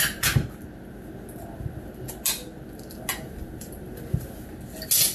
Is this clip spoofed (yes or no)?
no